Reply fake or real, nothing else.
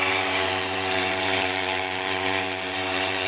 fake